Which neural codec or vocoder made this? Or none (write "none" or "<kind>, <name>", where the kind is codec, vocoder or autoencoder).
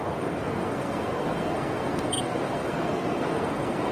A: codec, SNAC